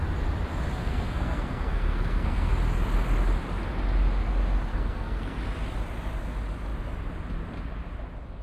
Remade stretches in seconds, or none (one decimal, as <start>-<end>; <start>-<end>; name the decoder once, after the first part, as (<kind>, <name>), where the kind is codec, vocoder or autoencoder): 0.8-2.5 (codec, SNAC); 4.7-5.4